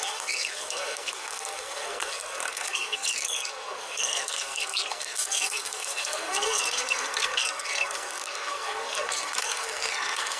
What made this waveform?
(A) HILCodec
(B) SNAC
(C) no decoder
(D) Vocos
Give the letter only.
B